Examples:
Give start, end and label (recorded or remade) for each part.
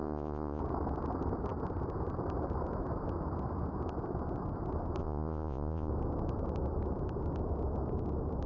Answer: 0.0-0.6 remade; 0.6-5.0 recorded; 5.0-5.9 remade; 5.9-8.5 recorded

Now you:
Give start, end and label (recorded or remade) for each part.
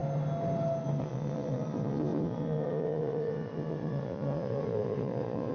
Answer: 0.0-1.0 recorded; 1.0-5.5 remade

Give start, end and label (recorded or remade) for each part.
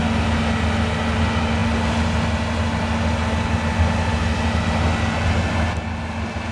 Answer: 0.0-6.5 recorded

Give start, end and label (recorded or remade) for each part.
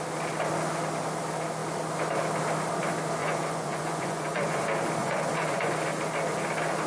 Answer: 0.0-3.2 recorded; 3.2-4.6 remade; 4.6-5.0 recorded; 5.0-5.7 remade; 5.7-6.9 recorded